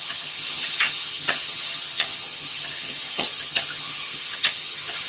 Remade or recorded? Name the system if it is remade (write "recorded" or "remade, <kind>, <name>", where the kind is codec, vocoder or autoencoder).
remade, vocoder, HiFi-GAN